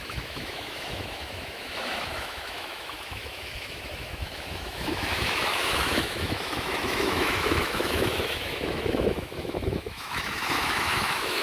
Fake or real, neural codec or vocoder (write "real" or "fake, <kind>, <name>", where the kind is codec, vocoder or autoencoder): fake, autoencoder, DAC-VAE